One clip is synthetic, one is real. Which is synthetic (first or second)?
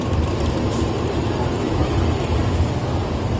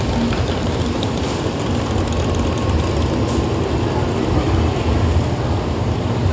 first